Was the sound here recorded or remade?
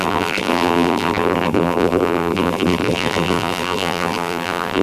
remade